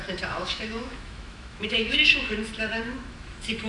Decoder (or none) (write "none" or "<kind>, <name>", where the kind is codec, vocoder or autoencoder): autoencoder, DAC-VAE